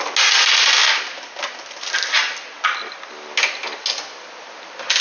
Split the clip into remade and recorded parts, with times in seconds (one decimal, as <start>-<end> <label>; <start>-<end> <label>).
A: 0.0-5.0 recorded